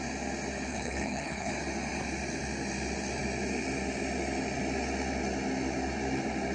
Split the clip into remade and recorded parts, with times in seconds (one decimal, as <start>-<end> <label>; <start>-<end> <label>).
0.0-0.7 recorded; 0.7-1.5 remade; 1.5-6.5 recorded